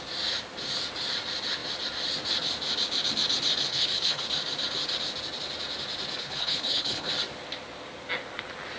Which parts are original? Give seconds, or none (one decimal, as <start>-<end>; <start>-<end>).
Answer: 0.0-3.7; 4.2-6.2; 7.1-8.8